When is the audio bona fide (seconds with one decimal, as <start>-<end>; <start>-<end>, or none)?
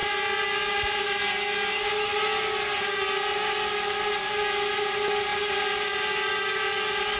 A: 0.0-7.2